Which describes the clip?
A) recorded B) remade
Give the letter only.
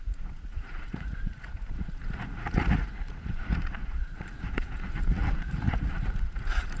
B